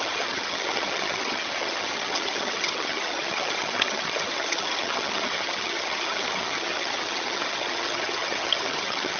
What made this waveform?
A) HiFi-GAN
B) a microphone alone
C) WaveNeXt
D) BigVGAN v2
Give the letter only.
A